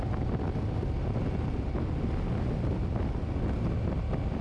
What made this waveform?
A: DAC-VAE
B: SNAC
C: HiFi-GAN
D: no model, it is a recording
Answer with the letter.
D